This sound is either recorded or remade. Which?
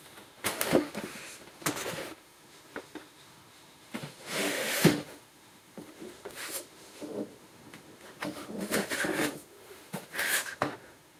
remade